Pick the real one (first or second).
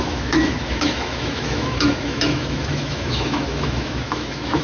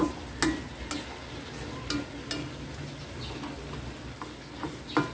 second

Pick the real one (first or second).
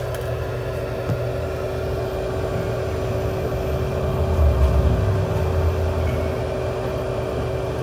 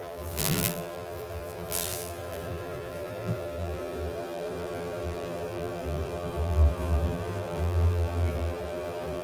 first